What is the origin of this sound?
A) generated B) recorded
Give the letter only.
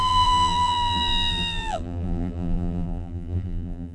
A